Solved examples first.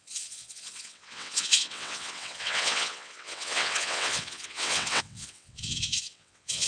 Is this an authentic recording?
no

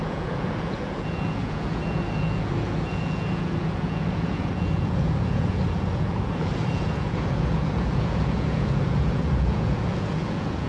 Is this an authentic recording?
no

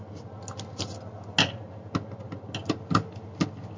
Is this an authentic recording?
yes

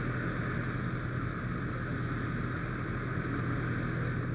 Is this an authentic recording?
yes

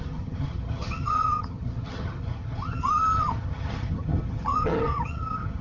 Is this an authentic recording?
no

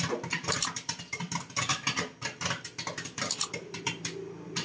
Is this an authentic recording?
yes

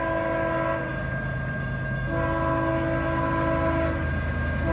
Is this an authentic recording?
yes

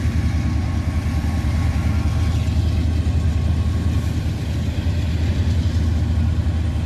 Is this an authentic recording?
yes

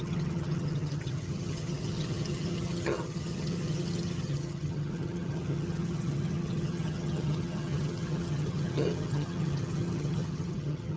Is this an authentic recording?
no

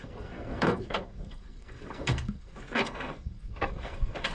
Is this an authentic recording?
no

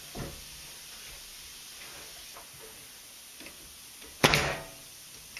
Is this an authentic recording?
yes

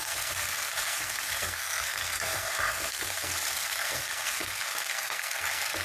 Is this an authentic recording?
no